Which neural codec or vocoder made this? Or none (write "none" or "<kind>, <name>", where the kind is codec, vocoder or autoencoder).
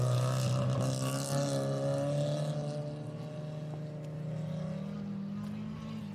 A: none